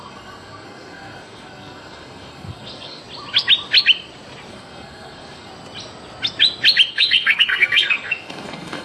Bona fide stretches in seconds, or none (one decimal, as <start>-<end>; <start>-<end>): 3.0-4.5; 5.5-6.9